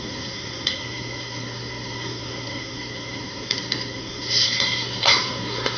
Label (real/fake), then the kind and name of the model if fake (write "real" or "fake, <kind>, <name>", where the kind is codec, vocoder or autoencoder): fake, codec, SNAC